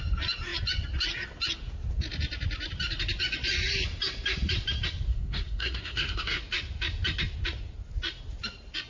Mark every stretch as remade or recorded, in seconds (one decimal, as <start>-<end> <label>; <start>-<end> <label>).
0.0-5.1 recorded; 5.1-6.4 remade; 6.4-8.9 recorded